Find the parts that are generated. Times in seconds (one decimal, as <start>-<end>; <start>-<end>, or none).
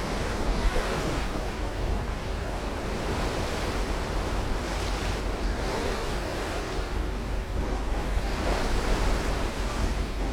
0.0-2.7; 5.4-8.4; 9.5-10.3